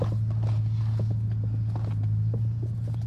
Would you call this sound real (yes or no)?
yes